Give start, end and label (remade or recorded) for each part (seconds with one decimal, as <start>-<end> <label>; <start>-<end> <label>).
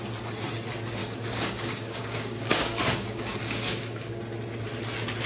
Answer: 0.0-1.0 recorded; 1.0-4.2 remade; 4.2-5.3 recorded